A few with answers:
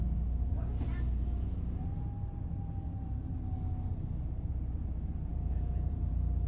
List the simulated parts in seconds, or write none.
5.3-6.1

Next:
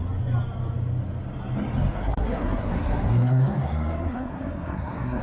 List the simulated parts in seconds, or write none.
2.0-5.2

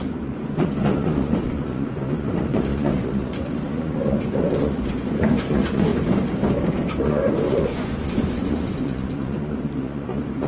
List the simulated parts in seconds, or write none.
0.0-5.9; 7.0-10.5

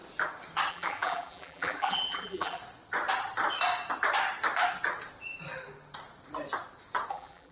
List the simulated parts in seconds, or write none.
0.7-2.6; 7.1-7.5

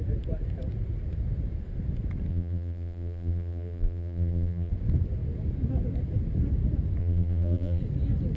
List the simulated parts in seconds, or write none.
2.3-4.7; 7.0-7.8